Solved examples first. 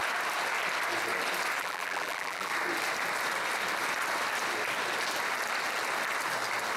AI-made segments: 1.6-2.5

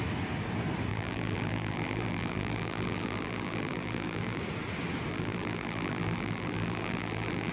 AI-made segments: 0.9-4.4; 5.1-7.5